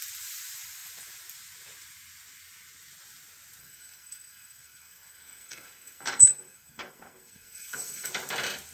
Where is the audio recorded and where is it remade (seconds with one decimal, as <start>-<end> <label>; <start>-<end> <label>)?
0.0-3.6 recorded; 3.6-8.1 remade; 8.1-8.7 recorded